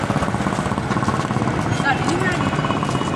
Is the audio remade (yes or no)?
no